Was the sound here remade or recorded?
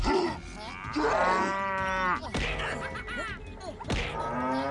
recorded